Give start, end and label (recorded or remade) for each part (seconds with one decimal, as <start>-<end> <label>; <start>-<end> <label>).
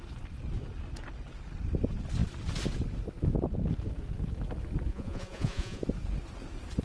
0.0-4.9 recorded; 4.9-5.8 remade; 5.8-6.8 recorded